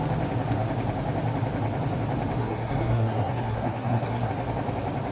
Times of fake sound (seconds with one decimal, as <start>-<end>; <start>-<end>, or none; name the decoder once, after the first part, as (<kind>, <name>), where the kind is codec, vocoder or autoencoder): 2.4-4.3 (codec, SNAC)